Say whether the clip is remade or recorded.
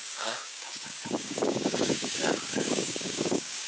remade